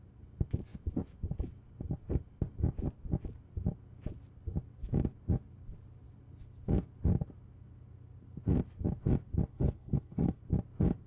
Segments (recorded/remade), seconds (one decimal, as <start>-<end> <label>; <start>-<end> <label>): 0.0-9.5 recorded; 9.5-10.4 remade; 10.4-11.1 recorded